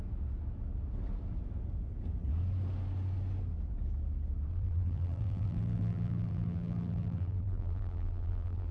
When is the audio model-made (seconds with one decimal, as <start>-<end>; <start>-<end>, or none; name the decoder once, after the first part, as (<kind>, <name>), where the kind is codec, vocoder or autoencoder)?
4.5-8.7 (vocoder, BigVGAN v2)